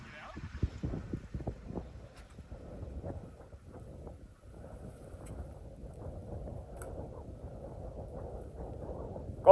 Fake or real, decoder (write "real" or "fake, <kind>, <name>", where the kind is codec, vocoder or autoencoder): real